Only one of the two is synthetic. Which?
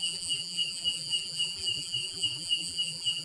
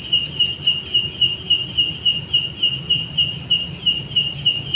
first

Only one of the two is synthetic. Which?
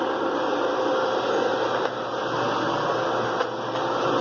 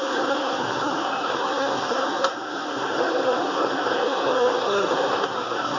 second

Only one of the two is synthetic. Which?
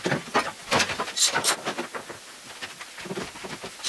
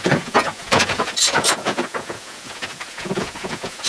second